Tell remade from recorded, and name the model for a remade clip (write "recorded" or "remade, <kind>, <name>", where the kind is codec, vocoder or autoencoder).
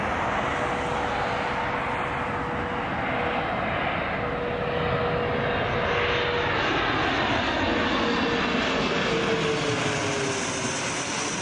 recorded